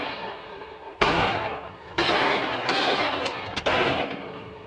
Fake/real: fake